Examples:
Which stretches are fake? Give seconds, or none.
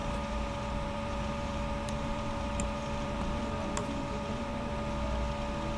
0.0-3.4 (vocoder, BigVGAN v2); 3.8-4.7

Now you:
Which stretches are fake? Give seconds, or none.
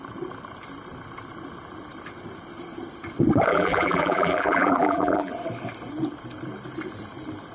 3.5-5.3 (vocoder, BigVGAN v2)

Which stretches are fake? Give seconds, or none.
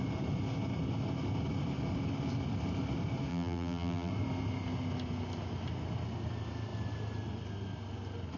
3.3-4.1 (vocoder, BigVGAN v2)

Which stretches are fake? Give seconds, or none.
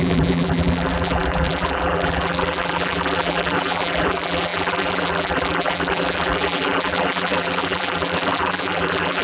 0.0-9.2 (vocoder, BigVGAN v2)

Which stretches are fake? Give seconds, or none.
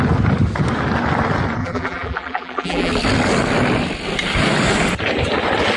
1.6-2.9 (vocoder, BigVGAN v2)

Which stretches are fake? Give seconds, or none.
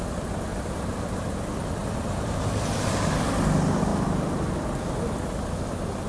0.5-1.4 (vocoder, BigVGAN v2); 1.8-3.3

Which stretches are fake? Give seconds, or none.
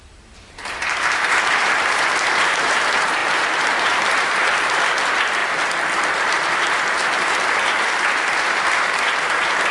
0.0-5.4 (vocoder, BigVGAN v2); 6.1-9.7